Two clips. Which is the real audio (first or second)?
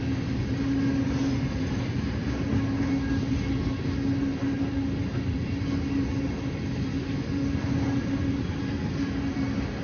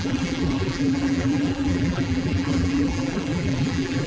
first